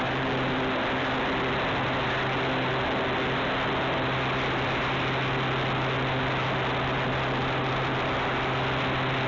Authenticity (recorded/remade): recorded